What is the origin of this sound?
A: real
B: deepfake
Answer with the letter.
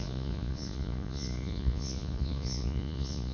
B